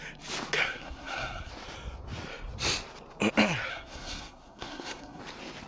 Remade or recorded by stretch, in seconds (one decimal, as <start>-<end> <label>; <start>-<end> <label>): 0.0-0.6 recorded; 0.6-1.5 remade; 1.5-3.7 recorded; 3.7-5.2 remade; 5.2-5.7 recorded